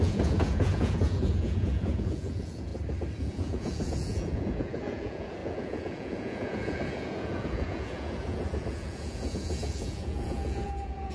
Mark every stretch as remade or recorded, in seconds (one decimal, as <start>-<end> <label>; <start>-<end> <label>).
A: 0.0-2.7 remade; 2.7-3.2 recorded; 3.2-11.1 remade